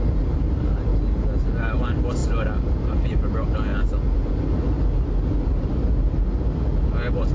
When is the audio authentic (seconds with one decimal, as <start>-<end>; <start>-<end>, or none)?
0.0-7.3